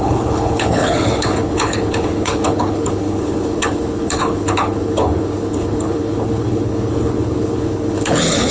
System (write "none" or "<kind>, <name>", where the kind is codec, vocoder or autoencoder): codec, HILCodec